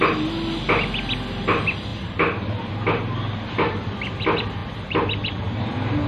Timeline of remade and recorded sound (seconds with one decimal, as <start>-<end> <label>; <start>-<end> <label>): 0.0-6.1 recorded